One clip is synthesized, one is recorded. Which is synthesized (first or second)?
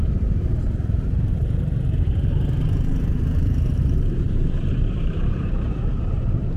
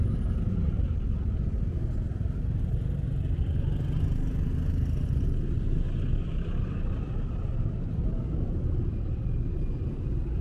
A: first